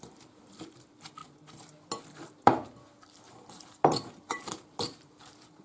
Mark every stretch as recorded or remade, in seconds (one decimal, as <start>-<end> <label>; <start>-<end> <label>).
0.0-1.2 remade; 1.2-2.0 recorded; 2.0-5.6 remade